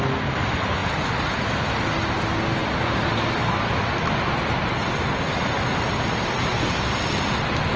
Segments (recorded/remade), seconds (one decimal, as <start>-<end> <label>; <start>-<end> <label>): 0.0-2.6 recorded; 2.6-6.7 remade; 6.7-7.8 recorded